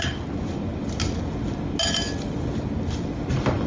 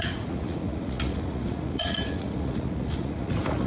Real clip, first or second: first